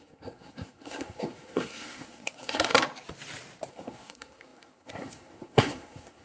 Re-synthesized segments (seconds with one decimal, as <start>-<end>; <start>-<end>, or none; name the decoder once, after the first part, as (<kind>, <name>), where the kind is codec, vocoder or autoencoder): 0.0-2.7 (codec, SNAC); 3.7-6.2